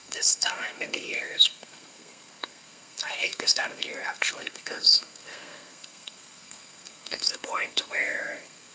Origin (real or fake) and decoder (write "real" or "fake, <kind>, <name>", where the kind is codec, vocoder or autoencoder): fake, codec, SNAC